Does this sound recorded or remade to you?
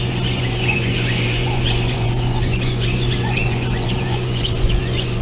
remade